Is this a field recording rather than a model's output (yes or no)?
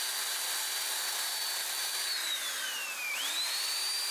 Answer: no